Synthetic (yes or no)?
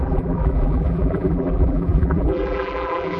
yes